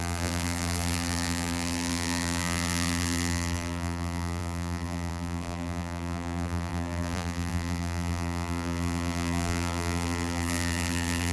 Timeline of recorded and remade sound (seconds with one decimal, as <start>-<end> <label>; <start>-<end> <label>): 0.0-11.3 remade